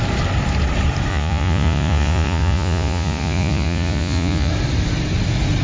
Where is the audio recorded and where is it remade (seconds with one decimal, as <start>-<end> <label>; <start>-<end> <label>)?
0.0-1.1 recorded; 1.1-4.5 remade; 4.5-5.6 recorded